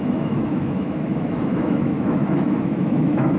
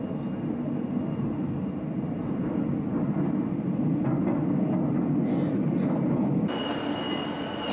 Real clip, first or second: second